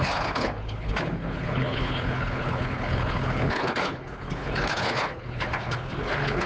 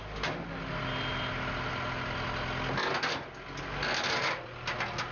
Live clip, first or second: second